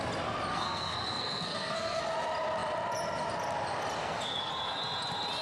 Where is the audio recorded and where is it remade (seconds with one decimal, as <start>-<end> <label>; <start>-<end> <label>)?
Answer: 0.0-0.5 recorded; 0.5-2.0 remade; 2.0-4.0 recorded; 4.0-4.5 remade; 4.5-5.4 recorded